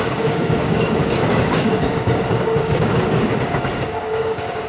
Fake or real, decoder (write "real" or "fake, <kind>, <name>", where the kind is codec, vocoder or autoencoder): fake, codec, DAC